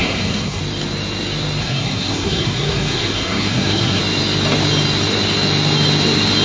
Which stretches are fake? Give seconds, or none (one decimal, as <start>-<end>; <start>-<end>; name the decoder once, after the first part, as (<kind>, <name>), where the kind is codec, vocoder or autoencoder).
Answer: 0.0-0.6 (codec, SNAC); 1.6-4.0